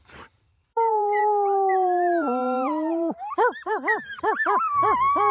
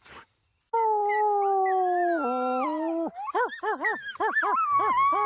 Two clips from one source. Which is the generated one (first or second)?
first